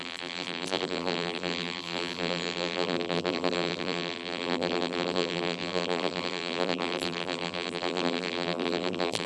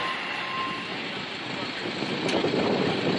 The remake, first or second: first